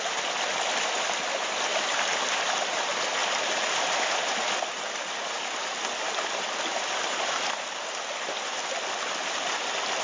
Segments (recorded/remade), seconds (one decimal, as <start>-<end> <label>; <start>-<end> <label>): 0.0-10.0 recorded